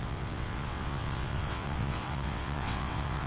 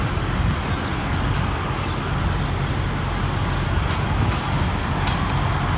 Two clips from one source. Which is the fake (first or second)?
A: first